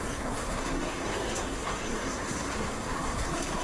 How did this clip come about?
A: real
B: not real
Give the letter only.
B